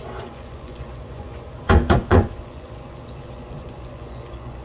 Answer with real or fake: fake